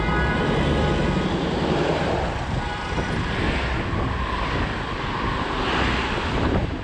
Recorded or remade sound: recorded